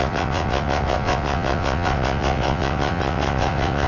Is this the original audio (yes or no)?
no